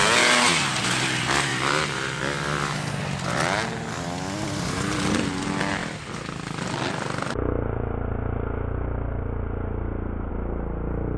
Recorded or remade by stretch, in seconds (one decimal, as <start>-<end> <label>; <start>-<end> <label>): 0.0-1.5 recorded; 1.5-2.2 remade; 2.2-11.2 recorded